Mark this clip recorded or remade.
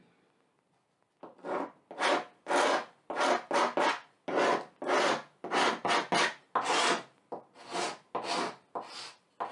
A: recorded